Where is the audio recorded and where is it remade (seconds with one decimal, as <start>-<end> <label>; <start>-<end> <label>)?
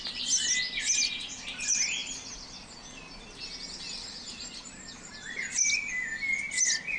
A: 0.0-7.0 recorded